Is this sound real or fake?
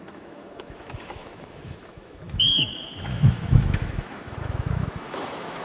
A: fake